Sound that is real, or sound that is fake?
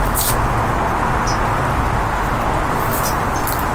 real